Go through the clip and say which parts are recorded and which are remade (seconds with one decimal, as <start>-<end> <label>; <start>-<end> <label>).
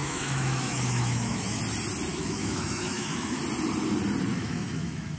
0.0-1.6 remade; 1.6-2.1 recorded; 2.1-3.4 remade; 3.4-4.3 recorded; 4.3-5.2 remade